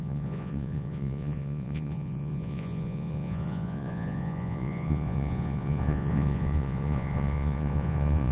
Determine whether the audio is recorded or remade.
remade